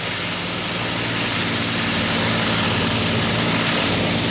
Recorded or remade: recorded